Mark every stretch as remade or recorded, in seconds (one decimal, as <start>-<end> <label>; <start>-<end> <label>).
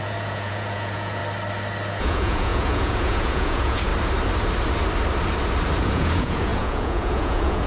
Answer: 0.0-1.2 remade; 1.2-1.9 recorded; 1.9-3.9 remade; 3.9-5.8 recorded; 5.8-7.7 remade